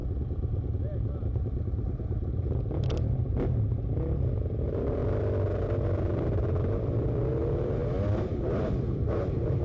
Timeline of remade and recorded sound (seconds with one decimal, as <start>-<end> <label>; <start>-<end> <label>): 0.0-4.6 recorded; 4.6-5.0 remade; 5.0-8.2 recorded; 8.2-9.6 remade